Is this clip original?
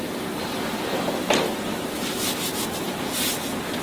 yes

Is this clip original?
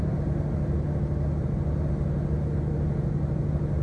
yes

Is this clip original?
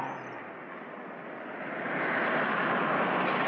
yes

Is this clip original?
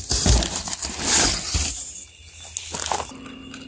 yes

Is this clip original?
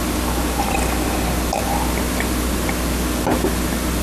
yes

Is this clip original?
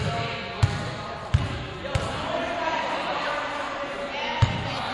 yes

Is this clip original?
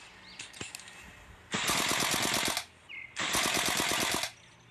yes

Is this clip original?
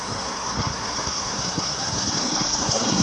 no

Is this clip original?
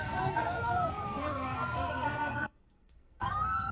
no